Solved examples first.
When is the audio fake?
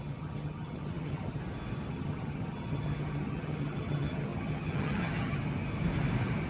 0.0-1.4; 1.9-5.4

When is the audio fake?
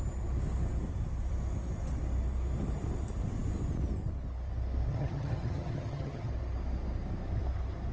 4.9-6.3